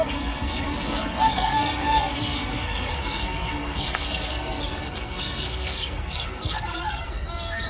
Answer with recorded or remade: remade